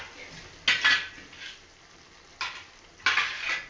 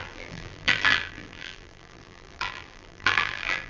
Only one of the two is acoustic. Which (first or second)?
first